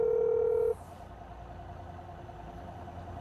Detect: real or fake real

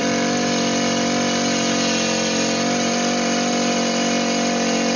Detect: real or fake real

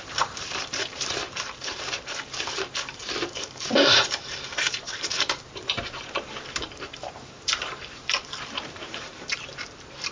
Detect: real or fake fake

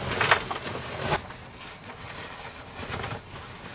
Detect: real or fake real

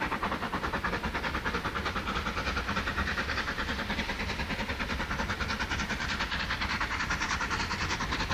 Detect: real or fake real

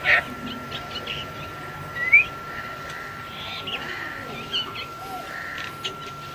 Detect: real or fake real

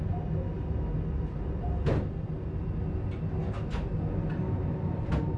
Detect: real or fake real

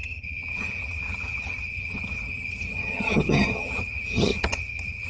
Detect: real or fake fake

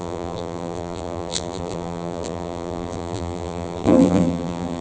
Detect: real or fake fake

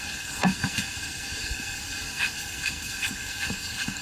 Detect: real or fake fake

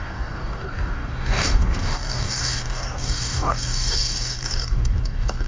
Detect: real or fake fake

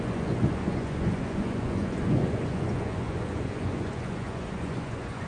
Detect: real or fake fake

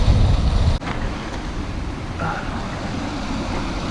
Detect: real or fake real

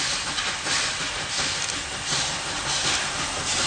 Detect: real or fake real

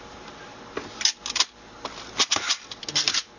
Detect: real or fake real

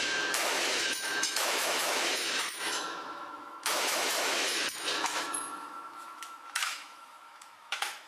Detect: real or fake fake